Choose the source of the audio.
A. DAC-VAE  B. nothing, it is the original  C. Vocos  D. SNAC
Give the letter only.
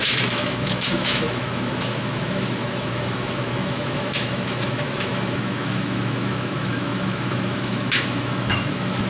A